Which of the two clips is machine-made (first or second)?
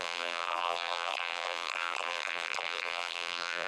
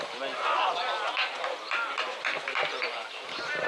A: first